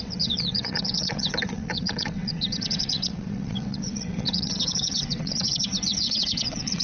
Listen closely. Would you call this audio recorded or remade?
remade